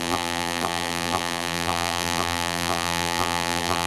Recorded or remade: remade